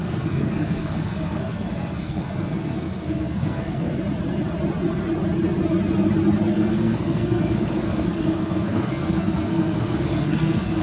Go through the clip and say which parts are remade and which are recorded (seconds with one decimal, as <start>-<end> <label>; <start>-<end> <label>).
0.0-3.9 remade; 3.9-6.5 recorded; 6.5-10.8 remade